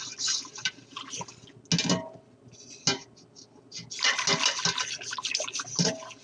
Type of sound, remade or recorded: recorded